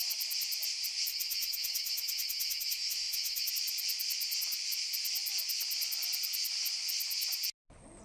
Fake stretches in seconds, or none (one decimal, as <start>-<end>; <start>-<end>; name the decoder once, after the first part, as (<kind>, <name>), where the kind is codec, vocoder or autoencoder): 1.1-3.5 (autoencoder, DAC-VAE)